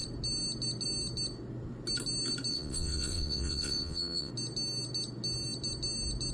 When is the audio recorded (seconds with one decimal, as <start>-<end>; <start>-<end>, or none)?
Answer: 0.0-2.5; 4.3-6.3